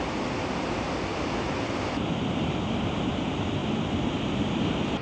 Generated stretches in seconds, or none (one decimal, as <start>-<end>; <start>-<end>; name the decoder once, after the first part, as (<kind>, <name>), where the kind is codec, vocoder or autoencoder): none

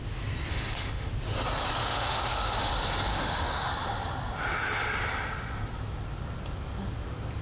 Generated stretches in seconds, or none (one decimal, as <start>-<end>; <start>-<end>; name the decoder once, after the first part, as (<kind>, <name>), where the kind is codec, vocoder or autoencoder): 0.5-1.1 (autoencoder, DAC-VAE); 1.8-2.7; 3.1-3.7